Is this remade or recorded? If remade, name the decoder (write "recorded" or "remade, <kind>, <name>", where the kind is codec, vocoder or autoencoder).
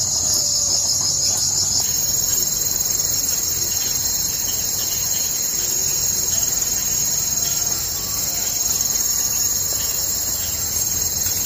remade, vocoder, BigVGAN v2